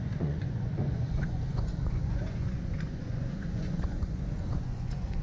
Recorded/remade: remade